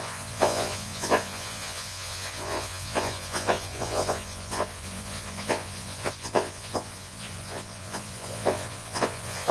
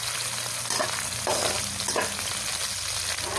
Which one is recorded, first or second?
second